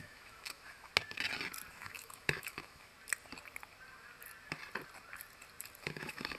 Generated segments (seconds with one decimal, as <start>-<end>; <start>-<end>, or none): 0.0-0.9; 1.7-2.9; 5.8-6.4